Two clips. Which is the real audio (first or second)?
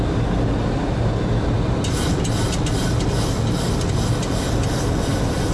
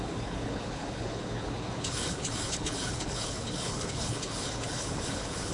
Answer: first